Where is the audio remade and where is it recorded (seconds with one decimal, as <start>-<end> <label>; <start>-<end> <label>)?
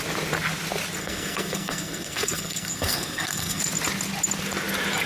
0.0-1.0 recorded; 1.0-3.6 remade; 3.6-5.1 recorded